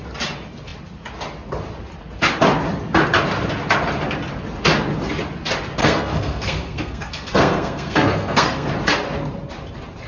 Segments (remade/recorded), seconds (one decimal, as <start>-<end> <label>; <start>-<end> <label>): 0.0-5.8 recorded; 5.8-8.7 remade; 8.7-10.1 recorded